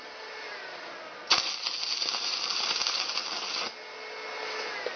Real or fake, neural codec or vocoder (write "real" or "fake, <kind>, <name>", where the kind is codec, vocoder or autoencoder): real